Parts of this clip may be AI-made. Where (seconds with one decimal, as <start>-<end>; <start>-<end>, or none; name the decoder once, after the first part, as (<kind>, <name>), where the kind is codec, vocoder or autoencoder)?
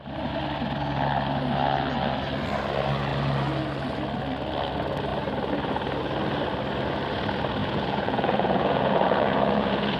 7.6-10.0 (vocoder, Vocos)